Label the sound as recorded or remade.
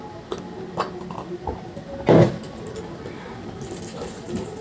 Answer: recorded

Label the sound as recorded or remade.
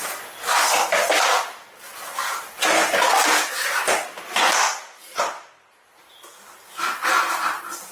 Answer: recorded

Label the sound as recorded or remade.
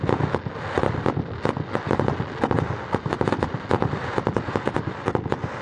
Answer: recorded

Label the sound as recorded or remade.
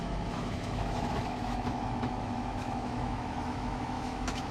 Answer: remade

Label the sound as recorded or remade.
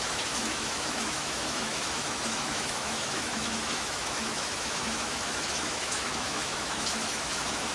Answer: remade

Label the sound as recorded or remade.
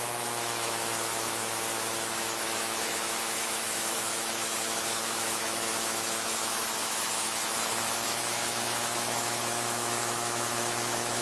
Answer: remade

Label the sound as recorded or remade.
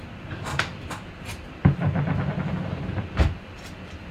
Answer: recorded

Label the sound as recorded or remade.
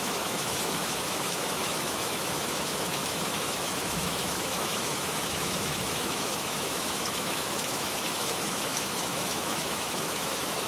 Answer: remade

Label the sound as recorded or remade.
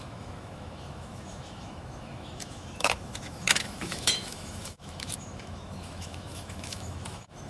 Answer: remade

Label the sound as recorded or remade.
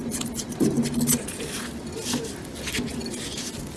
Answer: recorded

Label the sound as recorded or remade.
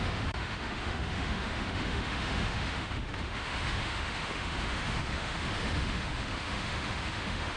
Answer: remade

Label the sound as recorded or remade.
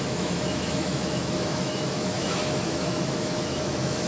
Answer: remade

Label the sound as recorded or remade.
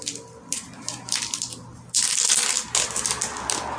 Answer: recorded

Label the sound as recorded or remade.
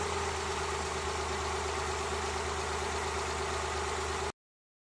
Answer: recorded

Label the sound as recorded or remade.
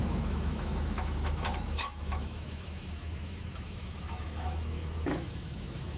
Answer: remade